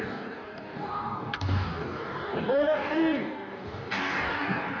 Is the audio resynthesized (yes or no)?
yes